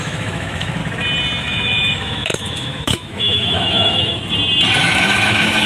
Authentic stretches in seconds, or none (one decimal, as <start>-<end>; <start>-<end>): 0.8-1.4; 4.2-4.8